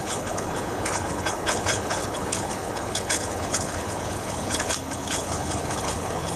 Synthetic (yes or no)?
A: yes